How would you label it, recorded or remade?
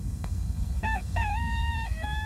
remade